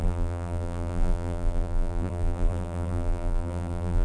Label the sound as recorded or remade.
remade